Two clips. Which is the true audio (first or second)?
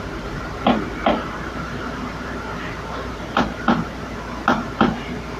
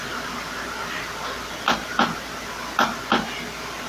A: second